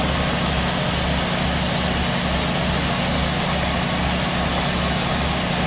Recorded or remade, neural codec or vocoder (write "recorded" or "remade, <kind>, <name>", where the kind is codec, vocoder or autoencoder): recorded